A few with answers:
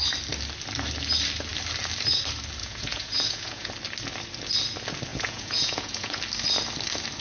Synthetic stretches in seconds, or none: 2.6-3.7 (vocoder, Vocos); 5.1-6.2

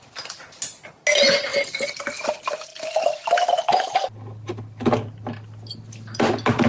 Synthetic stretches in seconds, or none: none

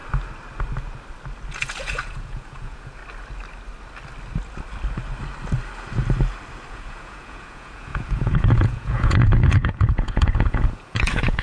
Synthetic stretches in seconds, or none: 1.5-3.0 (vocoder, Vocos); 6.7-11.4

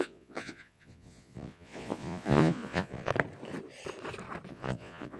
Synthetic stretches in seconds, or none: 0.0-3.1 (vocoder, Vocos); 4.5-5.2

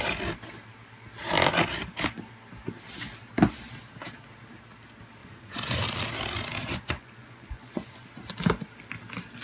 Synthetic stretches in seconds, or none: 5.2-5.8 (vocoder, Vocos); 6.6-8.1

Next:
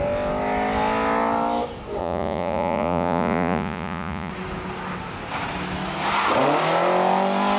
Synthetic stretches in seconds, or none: 2.0-4.3 (vocoder, Vocos)

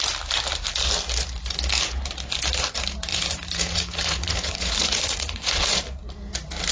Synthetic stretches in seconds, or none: 3.1-5.8 (vocoder, Vocos)

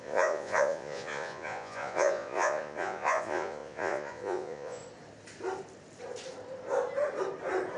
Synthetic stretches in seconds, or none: 0.0-4.8 (vocoder, Vocos)